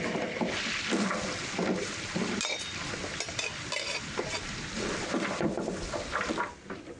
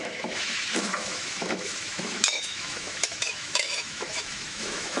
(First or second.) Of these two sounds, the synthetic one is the second